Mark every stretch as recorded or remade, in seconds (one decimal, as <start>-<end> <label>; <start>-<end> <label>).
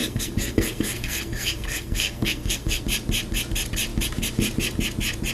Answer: 0.0-2.8 remade; 2.8-5.3 recorded